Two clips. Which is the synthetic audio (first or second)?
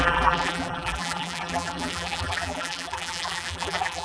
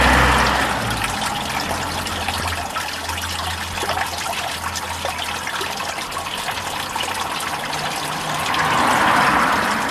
first